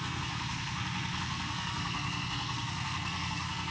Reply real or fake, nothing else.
fake